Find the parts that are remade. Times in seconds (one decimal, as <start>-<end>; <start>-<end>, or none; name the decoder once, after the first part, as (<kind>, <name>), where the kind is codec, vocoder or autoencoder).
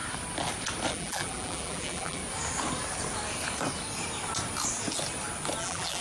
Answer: 0.9-2.2 (vocoder, BigVGAN v2); 5.6-6.0